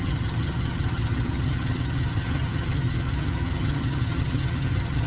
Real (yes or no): no